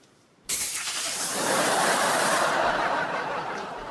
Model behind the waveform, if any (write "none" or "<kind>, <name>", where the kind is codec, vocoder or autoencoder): vocoder, BigVGAN v2